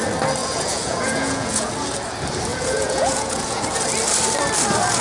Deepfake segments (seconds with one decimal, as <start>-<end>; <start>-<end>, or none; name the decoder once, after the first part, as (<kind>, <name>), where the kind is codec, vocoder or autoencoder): 0.4-1.7 (vocoder, Vocos); 2.5-3.6